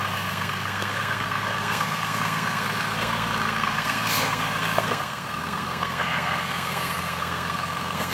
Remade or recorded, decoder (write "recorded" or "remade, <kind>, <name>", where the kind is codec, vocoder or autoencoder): remade, codec, SNAC